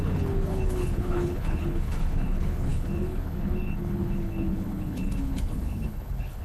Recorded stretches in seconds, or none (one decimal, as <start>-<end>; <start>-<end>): none